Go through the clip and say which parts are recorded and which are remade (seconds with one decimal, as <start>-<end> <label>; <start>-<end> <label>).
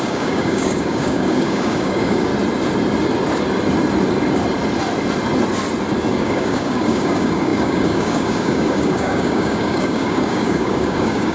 0.0-2.3 remade; 2.3-6.1 recorded; 6.1-11.3 remade